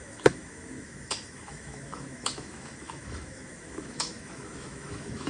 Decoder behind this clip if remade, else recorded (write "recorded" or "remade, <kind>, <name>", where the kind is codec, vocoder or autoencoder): remade, autoencoder, DAC-VAE